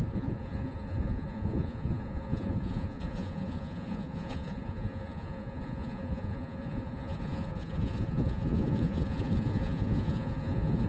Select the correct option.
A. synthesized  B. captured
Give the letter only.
A